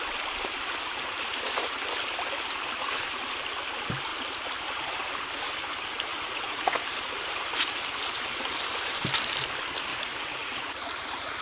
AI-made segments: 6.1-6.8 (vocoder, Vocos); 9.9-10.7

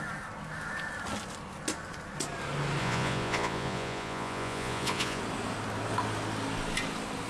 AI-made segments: 2.8-5.2 (vocoder, Vocos)

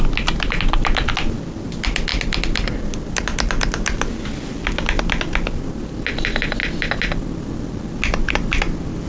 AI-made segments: none

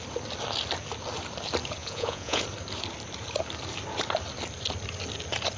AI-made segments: 1.8-2.4 (vocoder, Vocos)